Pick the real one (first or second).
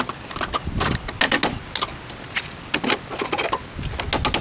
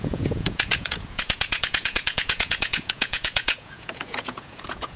first